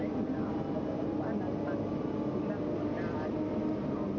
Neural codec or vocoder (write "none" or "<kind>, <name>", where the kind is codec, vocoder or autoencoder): none